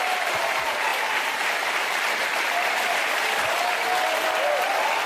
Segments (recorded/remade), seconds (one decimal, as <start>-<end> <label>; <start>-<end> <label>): 0.0-5.1 recorded